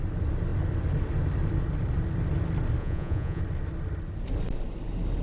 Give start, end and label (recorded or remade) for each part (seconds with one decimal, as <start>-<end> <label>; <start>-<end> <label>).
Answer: 0.0-2.8 recorded; 2.8-3.4 remade; 3.4-5.2 recorded